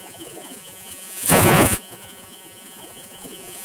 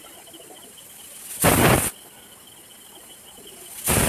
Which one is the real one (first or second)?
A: second